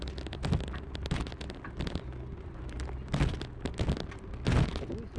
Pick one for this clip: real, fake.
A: real